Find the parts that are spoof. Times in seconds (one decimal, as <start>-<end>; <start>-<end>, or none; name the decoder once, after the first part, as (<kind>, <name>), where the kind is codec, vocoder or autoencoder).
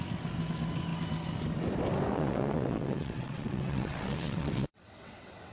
2.1-5.5 (vocoder, WaveNeXt)